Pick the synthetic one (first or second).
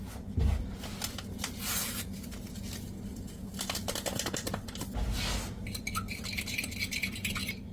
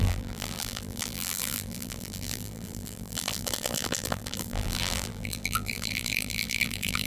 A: second